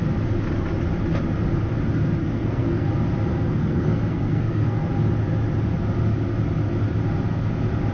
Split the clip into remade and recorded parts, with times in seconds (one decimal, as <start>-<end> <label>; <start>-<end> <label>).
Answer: 0.0-2.2 recorded; 2.2-2.9 remade; 2.9-3.3 recorded; 3.3-4.9 remade; 4.9-7.9 recorded